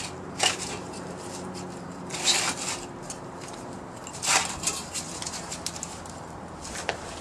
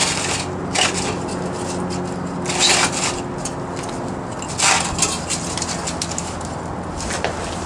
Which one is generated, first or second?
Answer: first